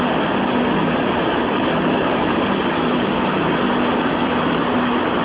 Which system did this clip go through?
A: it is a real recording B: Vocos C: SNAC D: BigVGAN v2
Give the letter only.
A